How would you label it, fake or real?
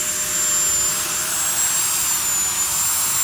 real